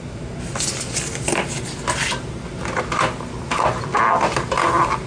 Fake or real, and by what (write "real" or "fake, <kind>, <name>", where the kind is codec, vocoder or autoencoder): real